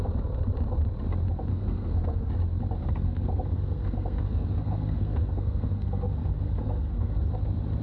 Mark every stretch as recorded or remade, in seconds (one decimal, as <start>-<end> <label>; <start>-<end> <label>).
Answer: 0.0-1.5 recorded; 1.5-2.3 remade; 2.3-2.8 recorded; 2.8-7.2 remade; 7.2-7.8 recorded